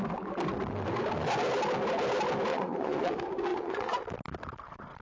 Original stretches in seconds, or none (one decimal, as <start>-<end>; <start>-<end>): 0.0-2.5; 3.1-3.5; 4.0-5.0